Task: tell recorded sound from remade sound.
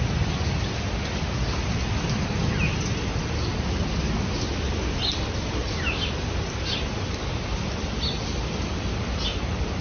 recorded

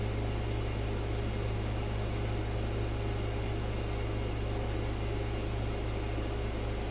recorded